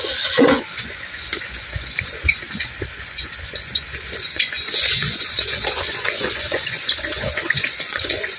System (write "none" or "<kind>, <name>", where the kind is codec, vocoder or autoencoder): vocoder, Vocos